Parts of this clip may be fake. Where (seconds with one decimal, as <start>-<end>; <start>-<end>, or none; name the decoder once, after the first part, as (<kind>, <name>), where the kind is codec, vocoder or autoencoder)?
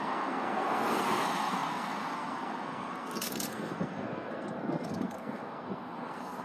0.0-6.4 (codec, SNAC)